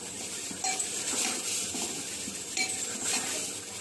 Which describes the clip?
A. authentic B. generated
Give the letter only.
A